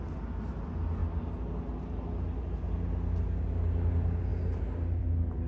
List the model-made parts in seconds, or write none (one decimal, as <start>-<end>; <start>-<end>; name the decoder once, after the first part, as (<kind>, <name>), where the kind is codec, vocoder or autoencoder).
none